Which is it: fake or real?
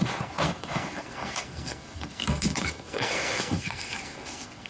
fake